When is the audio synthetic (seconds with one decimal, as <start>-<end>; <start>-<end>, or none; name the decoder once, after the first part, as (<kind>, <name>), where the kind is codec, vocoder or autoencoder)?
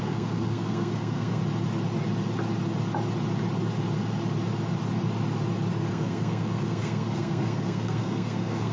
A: 0.0-1.4 (codec, SNAC); 5.9-8.7